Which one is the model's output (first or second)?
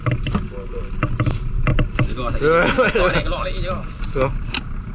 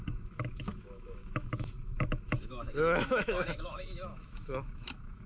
second